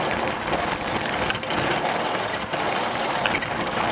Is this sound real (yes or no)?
yes